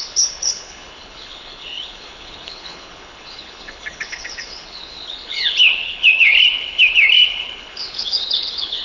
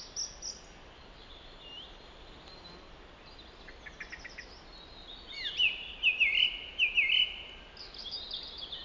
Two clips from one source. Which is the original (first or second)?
second